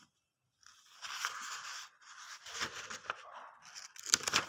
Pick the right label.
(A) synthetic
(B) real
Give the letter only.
B